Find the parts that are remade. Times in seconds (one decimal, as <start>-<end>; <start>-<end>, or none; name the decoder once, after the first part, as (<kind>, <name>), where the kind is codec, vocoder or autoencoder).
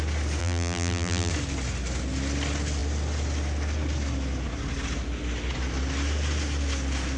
0.4-1.3 (vocoder, BigVGAN v2)